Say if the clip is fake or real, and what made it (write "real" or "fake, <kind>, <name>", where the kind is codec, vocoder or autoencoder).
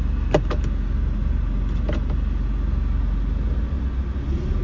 real